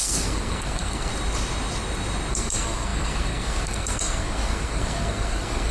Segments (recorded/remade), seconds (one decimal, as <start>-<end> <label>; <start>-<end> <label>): 0.0-1.1 remade; 1.1-2.3 recorded; 2.3-5.7 remade